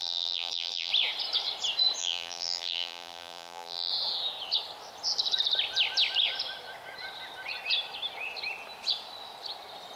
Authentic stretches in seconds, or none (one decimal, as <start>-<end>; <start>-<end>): 0.9-2.0; 3.9-10.0